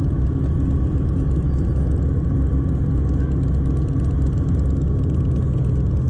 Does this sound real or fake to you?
real